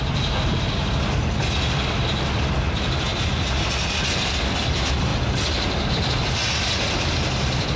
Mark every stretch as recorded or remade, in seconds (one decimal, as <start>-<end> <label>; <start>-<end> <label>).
0.0-7.8 recorded